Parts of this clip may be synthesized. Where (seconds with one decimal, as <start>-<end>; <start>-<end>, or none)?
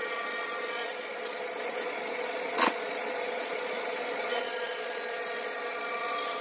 0.0-6.4